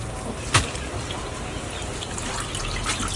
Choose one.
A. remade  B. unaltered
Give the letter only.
B